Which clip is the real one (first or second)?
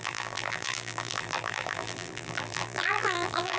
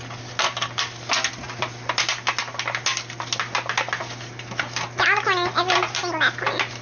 second